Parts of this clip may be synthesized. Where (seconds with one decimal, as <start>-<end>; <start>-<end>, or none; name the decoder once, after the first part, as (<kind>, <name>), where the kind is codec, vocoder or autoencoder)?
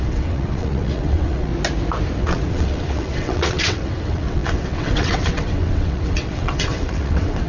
0.0-1.5 (vocoder, WaveNeXt); 2.2-7.5